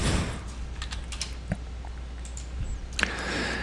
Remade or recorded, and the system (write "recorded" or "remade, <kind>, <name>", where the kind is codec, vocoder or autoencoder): recorded